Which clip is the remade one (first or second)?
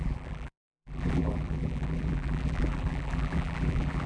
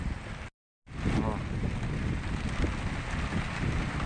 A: first